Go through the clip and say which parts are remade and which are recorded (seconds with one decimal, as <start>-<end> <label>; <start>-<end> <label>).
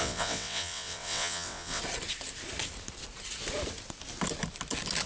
0.0-1.8 remade; 1.8-5.1 recorded